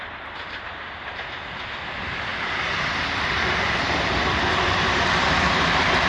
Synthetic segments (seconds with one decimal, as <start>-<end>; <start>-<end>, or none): none